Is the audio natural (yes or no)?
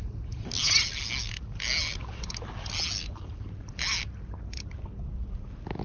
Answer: yes